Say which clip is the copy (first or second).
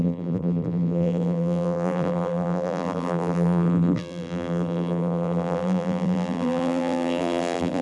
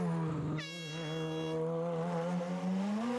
first